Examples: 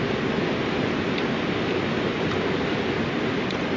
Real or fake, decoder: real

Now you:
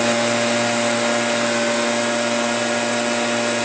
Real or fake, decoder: real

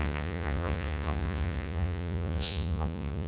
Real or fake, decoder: fake, vocoder, Vocos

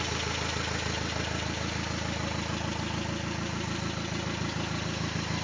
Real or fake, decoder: real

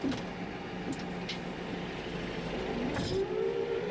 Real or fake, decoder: real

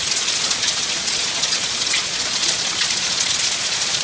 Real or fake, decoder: fake, vocoder, Vocos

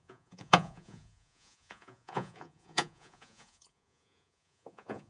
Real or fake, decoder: fake, vocoder, Vocos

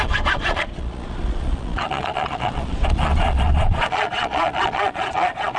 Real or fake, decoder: fake, vocoder, Vocos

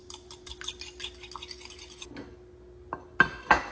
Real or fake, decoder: real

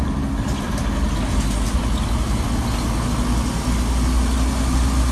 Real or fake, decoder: real